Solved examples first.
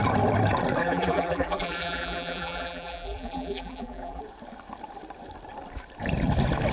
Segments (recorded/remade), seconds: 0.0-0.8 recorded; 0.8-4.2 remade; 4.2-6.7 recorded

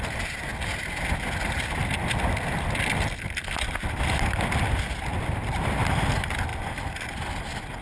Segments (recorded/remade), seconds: 0.0-7.8 recorded

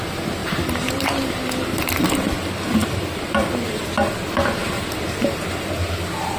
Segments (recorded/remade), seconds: 0.0-0.4 recorded; 0.4-1.3 remade; 1.3-2.8 recorded; 2.8-3.9 remade; 3.9-4.6 recorded; 4.6-5.7 remade; 5.7-6.4 recorded

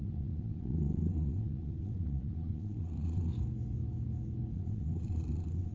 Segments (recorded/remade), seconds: 0.0-3.3 remade; 3.3-4.5 recorded; 4.5-5.7 remade